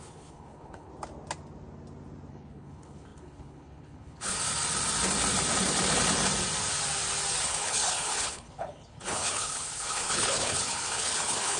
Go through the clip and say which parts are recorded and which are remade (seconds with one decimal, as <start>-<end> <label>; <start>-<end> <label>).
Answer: 0.0-0.9 remade; 0.9-2.3 recorded; 2.3-4.4 remade; 4.4-7.4 recorded; 7.4-11.6 remade